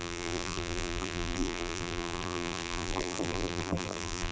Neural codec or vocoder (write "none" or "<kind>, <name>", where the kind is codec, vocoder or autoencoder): vocoder, BigVGAN v2